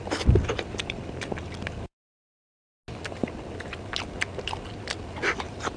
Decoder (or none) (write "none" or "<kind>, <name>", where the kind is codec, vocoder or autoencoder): none